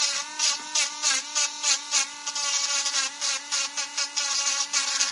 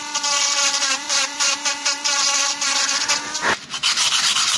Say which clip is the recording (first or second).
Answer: first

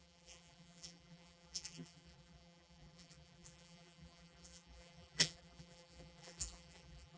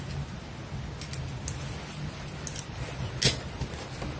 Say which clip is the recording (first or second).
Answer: second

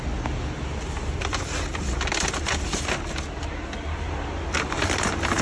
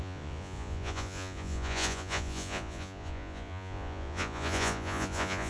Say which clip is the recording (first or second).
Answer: first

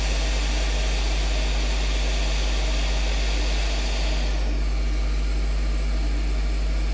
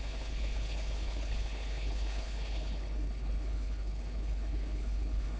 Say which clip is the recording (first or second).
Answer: first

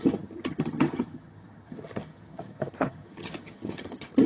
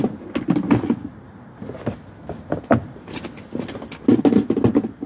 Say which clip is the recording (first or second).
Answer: second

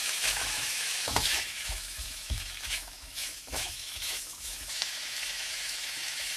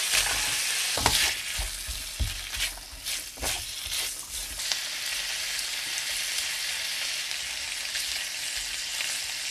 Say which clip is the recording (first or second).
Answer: second